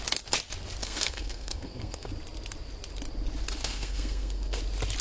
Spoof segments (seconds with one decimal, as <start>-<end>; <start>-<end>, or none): 0.8-2.1; 3.6-4.6